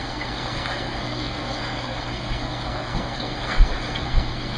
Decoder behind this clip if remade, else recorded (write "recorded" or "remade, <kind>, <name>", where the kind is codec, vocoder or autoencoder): remade, codec, SNAC